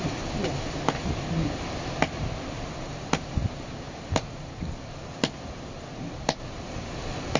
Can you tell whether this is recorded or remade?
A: recorded